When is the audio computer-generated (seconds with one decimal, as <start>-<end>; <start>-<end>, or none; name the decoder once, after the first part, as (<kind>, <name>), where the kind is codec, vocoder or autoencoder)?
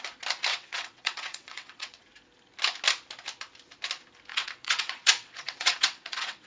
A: 0.5-2.0 (vocoder, WaveNeXt); 4.3-6.5